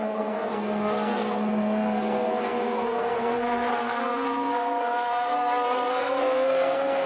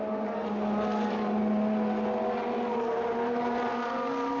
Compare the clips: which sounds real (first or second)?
second